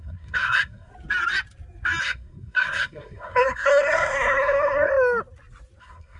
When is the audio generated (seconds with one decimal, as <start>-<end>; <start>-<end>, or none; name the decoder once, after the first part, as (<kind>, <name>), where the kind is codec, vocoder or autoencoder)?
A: 0.0-0.9 (codec, SNAC); 2.0-4.9; 5.8-6.2